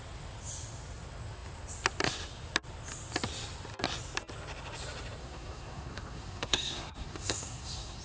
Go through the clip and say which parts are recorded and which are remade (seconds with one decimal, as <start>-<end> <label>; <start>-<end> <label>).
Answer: 0.0-5.2 recorded; 5.2-8.0 remade